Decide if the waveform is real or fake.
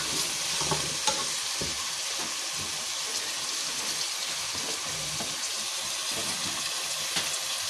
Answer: real